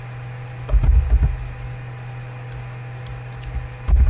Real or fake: real